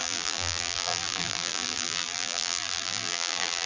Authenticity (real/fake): fake